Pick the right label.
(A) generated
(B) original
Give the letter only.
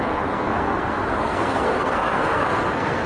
A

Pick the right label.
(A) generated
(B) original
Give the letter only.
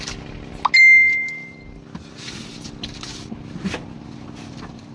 B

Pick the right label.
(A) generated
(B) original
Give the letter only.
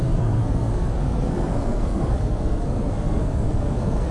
A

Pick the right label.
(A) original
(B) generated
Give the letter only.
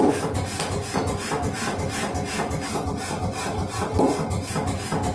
A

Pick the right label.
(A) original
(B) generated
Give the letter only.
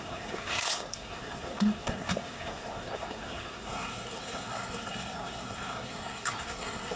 B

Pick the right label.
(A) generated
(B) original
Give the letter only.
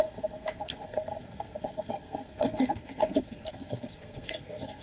A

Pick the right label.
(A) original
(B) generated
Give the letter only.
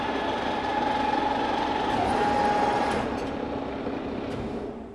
A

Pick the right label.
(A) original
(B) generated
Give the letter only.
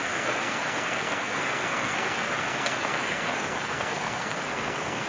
B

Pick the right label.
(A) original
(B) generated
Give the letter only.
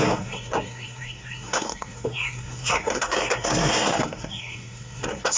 B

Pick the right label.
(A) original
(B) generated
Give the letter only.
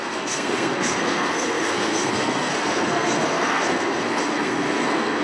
B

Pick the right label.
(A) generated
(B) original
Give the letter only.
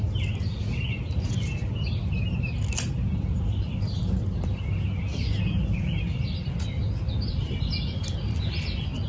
B